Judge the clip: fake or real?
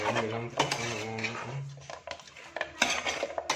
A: real